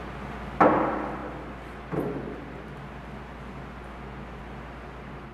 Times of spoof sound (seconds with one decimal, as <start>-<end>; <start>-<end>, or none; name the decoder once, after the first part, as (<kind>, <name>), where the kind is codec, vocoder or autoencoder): none